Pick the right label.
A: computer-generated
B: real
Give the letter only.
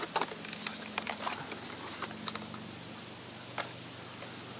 B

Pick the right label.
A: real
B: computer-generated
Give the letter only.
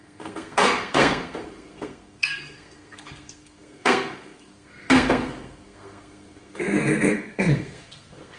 B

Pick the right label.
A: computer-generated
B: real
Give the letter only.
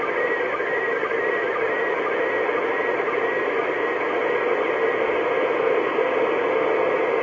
B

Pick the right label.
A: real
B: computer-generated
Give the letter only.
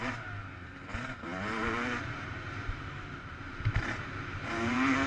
B